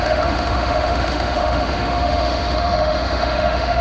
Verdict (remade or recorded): remade